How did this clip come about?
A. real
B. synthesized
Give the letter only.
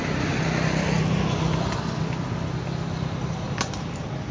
A